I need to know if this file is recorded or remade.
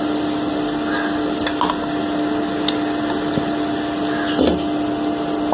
recorded